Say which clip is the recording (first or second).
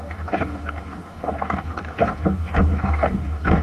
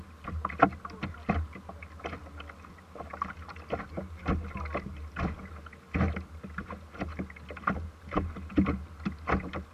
second